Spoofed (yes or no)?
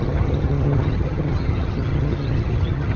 yes